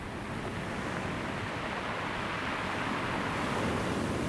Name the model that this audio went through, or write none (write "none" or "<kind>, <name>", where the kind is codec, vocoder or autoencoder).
none